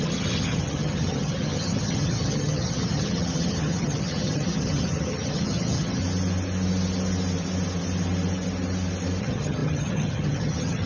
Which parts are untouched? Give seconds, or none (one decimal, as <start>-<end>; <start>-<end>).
6.0-9.2